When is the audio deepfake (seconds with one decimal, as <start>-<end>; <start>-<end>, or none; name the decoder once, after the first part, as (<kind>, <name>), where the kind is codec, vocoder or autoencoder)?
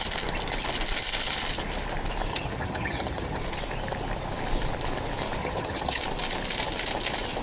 2.3-3.4 (vocoder, HiFi-GAN); 5.4-6.0